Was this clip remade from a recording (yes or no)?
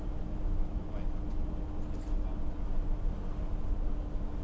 no